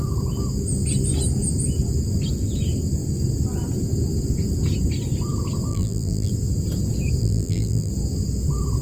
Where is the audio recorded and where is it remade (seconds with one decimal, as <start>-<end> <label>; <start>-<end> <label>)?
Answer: 0.0-5.7 recorded; 5.7-6.3 remade; 6.3-7.2 recorded; 7.2-7.9 remade; 7.9-8.8 recorded